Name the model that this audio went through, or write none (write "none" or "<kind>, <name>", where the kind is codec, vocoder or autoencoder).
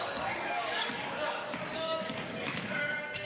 codec, DAC